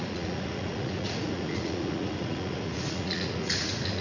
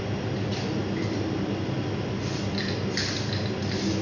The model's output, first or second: first